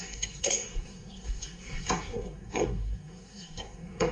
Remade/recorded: remade